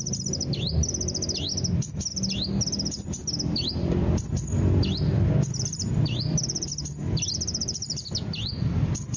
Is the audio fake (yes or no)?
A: no